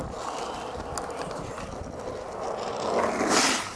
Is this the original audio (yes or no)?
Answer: yes